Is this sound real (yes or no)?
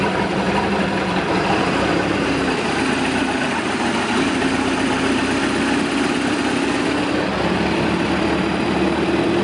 yes